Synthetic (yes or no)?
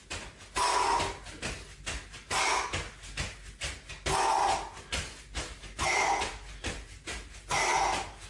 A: no